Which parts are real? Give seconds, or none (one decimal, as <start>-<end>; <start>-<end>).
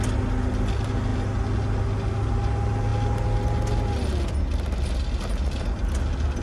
0.0-6.4